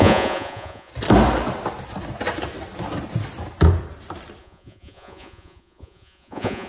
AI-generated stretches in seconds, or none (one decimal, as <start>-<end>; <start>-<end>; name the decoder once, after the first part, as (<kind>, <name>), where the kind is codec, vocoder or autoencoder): 0.0-0.9 (vocoder, Vocos); 4.4-6.7